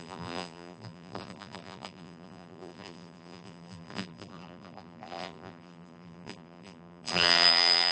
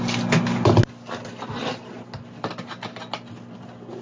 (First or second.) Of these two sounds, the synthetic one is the first